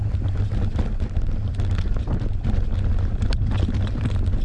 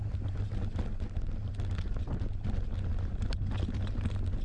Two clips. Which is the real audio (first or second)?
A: second